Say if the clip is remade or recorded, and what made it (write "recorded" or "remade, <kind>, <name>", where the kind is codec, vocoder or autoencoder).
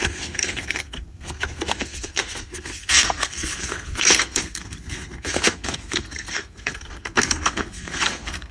remade, codec, SNAC